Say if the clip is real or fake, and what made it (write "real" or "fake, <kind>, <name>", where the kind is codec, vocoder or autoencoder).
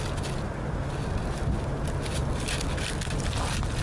real